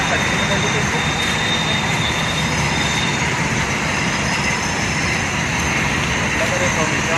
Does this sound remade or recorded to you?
recorded